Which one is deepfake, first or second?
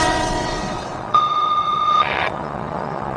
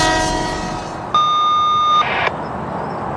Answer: first